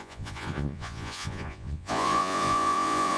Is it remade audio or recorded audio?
remade